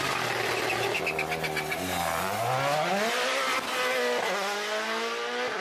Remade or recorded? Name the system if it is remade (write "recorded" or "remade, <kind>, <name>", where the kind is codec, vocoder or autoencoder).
recorded